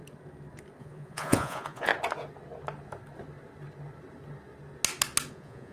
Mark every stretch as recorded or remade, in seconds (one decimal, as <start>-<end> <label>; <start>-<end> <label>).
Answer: 0.0-0.8 recorded; 0.8-1.9 remade; 1.9-5.3 recorded; 5.3-5.7 remade